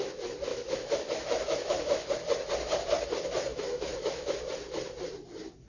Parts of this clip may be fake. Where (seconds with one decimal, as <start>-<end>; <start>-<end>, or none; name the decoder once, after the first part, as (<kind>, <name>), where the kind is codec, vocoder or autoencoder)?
0.5-2.1 (autoencoder, DAC-VAE); 3.5-4.4